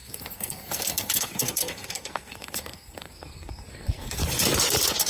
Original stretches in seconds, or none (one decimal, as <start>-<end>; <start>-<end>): 4.2-5.1